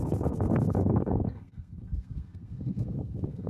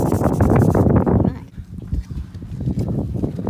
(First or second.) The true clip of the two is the second